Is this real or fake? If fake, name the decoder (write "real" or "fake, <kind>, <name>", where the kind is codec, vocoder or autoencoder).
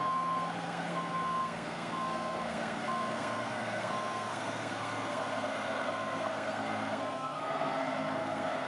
fake, codec, SNAC